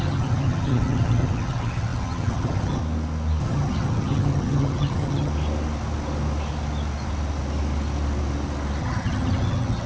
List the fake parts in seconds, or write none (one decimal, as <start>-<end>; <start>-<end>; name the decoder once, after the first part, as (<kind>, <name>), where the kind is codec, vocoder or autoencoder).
0.0-2.8 (vocoder, HiFi-GAN); 3.4-5.3; 8.8-9.9